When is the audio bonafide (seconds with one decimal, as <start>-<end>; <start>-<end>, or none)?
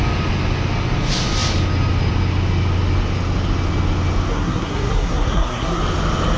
0.0-4.3; 5.8-6.4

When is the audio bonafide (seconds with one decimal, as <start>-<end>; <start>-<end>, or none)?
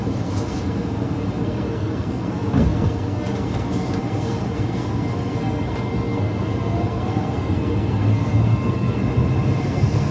9.0-9.6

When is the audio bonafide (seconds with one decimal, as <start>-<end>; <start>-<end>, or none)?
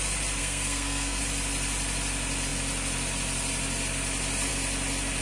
0.0-0.4; 1.2-5.2